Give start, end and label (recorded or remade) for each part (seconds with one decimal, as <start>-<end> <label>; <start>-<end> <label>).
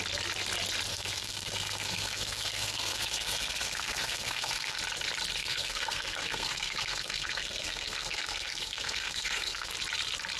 0.0-0.9 recorded; 0.9-4.8 remade; 4.8-5.4 recorded; 5.4-9.7 remade; 9.7-10.4 recorded